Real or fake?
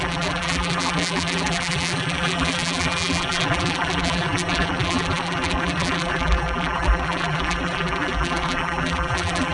fake